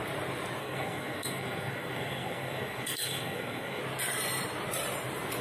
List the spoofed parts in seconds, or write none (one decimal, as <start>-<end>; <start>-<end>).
0.6-3.8